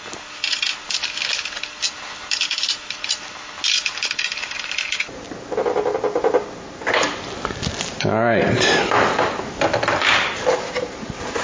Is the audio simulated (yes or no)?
no